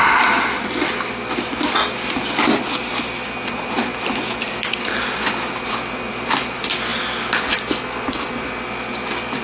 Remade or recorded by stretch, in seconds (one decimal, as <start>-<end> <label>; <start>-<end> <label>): 0.0-2.9 remade; 2.9-3.5 recorded; 3.5-6.9 remade; 6.9-9.4 recorded